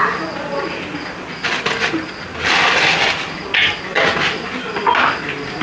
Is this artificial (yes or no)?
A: no